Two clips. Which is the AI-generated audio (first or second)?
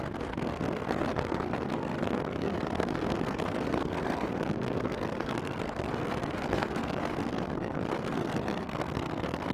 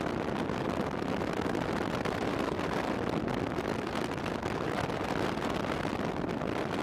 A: first